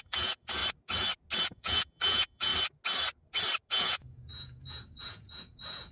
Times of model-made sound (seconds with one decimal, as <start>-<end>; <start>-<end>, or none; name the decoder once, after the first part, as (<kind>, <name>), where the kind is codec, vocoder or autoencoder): 0.0-0.6 (vocoder, Vocos); 1.4-2.5; 3.7-5.9